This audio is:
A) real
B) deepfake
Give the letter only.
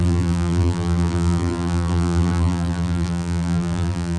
B